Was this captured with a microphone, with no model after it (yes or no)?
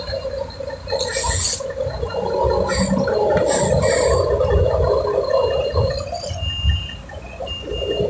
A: yes